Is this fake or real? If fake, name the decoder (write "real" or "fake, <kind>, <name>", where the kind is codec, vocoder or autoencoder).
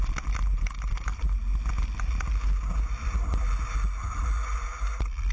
real